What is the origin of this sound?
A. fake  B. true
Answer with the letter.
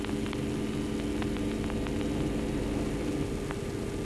B